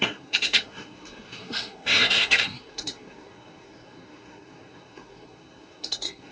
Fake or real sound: fake